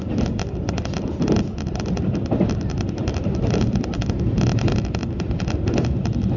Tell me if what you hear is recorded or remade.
recorded